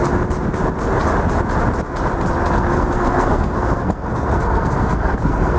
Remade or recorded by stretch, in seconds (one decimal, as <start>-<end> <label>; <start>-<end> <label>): 0.0-2.5 recorded; 2.5-5.6 remade